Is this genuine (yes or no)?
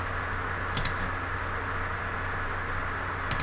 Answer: yes